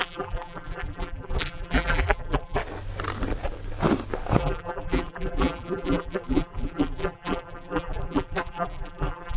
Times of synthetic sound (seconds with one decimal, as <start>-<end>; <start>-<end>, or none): 0.0-2.6; 4.4-9.4